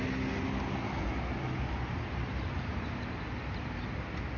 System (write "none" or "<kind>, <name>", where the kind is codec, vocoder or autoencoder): none